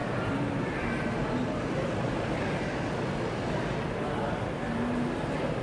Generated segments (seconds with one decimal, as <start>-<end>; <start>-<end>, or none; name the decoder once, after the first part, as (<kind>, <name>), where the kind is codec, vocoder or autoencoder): none